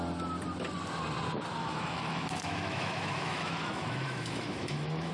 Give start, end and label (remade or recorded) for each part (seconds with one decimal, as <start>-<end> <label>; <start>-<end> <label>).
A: 0.0-1.6 recorded; 1.6-5.1 remade